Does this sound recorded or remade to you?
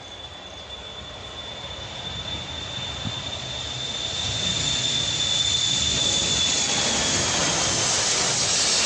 recorded